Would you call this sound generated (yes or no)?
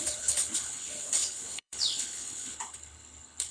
yes